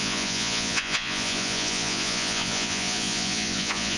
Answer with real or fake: fake